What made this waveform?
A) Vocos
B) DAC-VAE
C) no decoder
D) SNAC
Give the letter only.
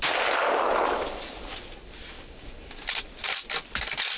C